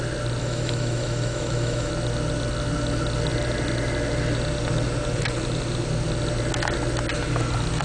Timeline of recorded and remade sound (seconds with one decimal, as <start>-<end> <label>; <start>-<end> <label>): 0.0-0.4 recorded; 0.4-1.9 remade; 1.9-7.8 recorded